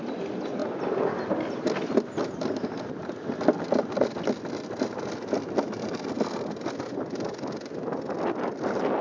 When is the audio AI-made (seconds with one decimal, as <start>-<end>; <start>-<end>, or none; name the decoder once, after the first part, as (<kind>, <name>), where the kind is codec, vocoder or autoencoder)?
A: none